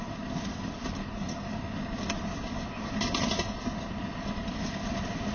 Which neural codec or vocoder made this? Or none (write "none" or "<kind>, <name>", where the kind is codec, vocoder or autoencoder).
none